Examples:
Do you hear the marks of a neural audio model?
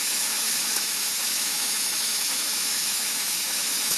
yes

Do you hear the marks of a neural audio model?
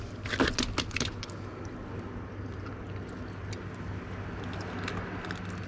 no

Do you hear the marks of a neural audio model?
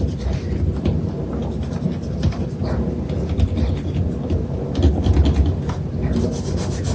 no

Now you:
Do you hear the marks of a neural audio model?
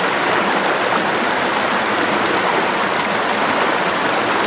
no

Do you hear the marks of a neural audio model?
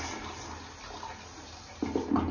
no